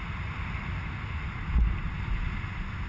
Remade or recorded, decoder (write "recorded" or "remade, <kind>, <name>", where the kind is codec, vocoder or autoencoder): recorded